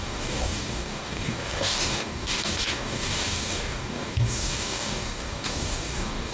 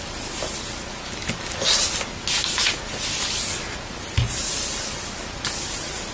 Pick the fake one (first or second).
first